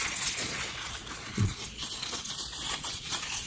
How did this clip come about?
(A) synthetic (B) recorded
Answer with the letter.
A